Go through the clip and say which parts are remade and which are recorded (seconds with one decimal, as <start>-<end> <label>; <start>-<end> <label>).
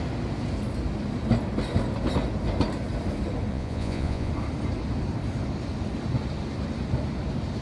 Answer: 0.0-3.5 recorded; 3.5-4.3 remade; 4.3-7.6 recorded